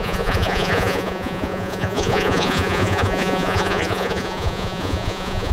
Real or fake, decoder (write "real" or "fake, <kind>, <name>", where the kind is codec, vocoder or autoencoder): fake, vocoder, Vocos